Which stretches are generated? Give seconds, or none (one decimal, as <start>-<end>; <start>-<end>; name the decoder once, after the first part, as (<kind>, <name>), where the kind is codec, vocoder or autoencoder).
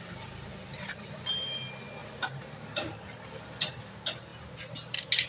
2.0-3.7 (vocoder, BigVGAN v2)